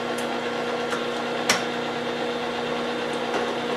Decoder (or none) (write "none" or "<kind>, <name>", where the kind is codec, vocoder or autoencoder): none